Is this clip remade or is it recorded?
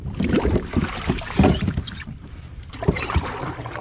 remade